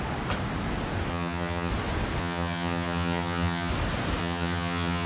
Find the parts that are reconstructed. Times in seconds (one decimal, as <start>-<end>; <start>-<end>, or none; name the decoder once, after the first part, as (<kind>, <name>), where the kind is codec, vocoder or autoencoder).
1.1-1.7 (vocoder, HiFi-GAN); 2.2-3.7; 4.2-5.1